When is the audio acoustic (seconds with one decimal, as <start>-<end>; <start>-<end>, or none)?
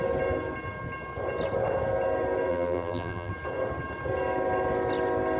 0.0-2.5; 3.3-5.4